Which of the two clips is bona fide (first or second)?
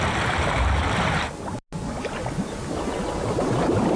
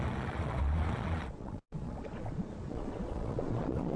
first